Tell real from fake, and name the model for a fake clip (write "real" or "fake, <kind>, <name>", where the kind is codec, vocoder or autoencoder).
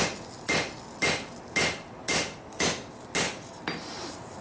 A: real